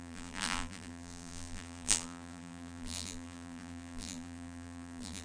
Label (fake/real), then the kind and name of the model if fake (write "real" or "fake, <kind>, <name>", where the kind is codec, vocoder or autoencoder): fake, vocoder, BigVGAN v2